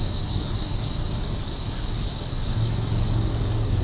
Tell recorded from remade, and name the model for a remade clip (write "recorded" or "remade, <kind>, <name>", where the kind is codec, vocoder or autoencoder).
remade, codec, DAC